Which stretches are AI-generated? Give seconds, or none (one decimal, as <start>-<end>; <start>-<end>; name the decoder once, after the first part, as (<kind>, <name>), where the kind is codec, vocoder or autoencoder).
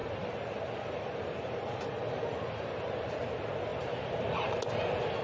0.0-3.1 (vocoder, BigVGAN v2); 3.7-4.5